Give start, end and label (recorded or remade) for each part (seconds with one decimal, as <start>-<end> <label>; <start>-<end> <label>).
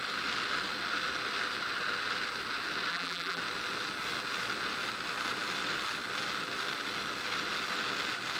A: 0.0-2.9 recorded; 2.9-3.4 remade; 3.4-8.4 recorded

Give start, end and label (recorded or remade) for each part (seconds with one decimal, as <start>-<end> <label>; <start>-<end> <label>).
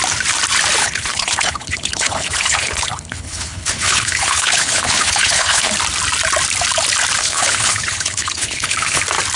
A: 0.0-0.8 recorded; 0.8-5.7 remade; 5.7-7.2 recorded; 7.2-9.0 remade; 9.0-9.4 recorded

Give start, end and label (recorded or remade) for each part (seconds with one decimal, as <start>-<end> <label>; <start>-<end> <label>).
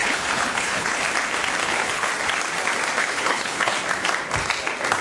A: 0.0-1.0 remade; 1.0-1.6 recorded; 1.6-2.1 remade; 2.1-3.0 recorded; 3.0-3.7 remade; 3.7-5.0 recorded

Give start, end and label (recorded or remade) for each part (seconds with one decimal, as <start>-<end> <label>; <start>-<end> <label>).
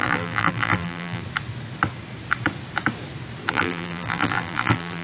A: 0.0-1.2 remade; 1.2-3.5 recorded; 3.5-5.0 remade